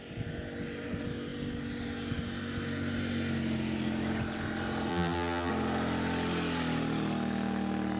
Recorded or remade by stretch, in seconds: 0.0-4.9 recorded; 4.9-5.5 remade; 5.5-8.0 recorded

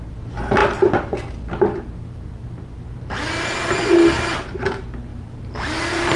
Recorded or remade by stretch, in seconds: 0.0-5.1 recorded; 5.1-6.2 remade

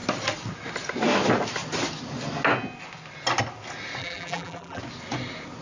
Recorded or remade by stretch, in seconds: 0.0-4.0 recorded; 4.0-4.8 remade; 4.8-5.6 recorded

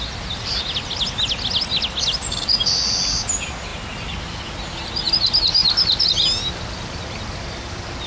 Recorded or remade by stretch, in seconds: 0.0-8.1 recorded

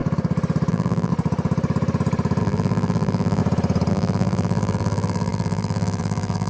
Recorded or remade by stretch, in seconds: 0.0-0.7 recorded; 0.7-1.1 remade; 1.1-2.4 recorded; 2.4-3.4 remade; 3.4-3.9 recorded; 3.9-6.5 remade